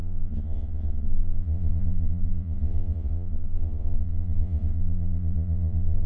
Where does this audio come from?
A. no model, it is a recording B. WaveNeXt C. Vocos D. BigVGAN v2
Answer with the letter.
C